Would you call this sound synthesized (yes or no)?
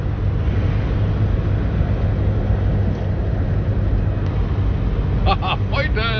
no